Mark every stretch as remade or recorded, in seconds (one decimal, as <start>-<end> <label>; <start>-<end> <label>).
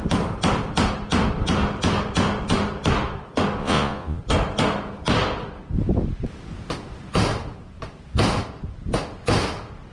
0.0-3.6 recorded; 3.6-4.2 remade; 4.2-9.9 recorded